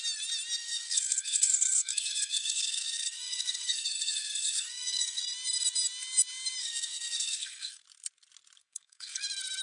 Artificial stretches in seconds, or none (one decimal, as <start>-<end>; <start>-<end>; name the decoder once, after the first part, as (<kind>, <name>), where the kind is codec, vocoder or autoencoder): 0.6-5.2 (codec, SNAC); 6.6-7.8; 8.6-9.2